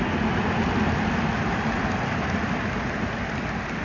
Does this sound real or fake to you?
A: real